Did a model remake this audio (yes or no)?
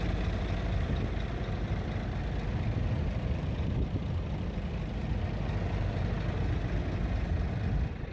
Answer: no